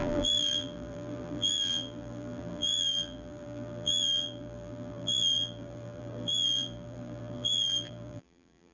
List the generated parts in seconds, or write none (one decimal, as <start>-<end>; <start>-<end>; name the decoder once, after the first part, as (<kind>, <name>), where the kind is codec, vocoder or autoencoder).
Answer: 0.0-8.7 (vocoder, BigVGAN v2)